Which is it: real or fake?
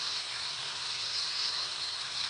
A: fake